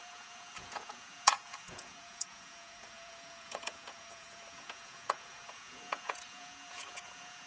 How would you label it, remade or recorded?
remade